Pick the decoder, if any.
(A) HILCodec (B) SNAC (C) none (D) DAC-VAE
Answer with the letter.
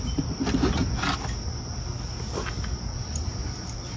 C